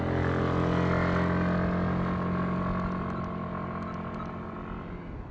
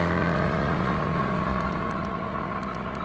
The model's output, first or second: second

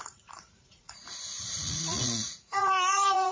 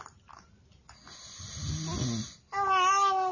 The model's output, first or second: first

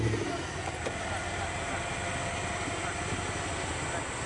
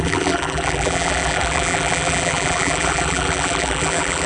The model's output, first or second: second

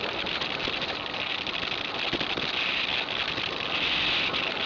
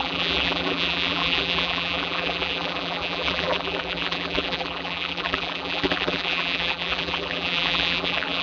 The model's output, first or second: second